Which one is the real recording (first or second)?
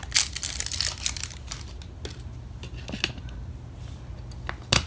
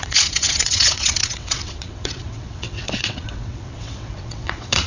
first